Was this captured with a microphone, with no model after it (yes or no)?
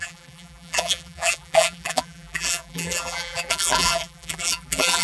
no